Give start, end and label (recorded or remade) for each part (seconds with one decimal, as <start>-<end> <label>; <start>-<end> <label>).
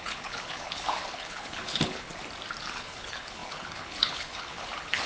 0.0-2.1 remade; 2.1-2.6 recorded; 2.6-5.1 remade